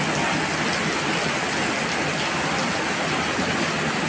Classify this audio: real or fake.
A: real